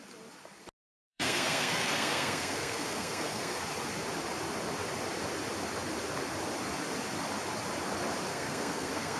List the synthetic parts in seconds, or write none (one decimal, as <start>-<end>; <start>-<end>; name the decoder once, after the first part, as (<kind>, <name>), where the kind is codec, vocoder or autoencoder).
0.9-3.6 (codec, SNAC); 8.3-9.2